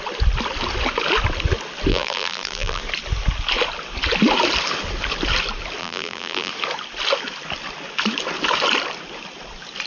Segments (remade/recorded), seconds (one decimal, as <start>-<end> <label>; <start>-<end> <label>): 0.0-1.9 recorded; 1.9-2.8 remade; 2.8-5.8 recorded; 5.8-6.5 remade; 6.5-9.9 recorded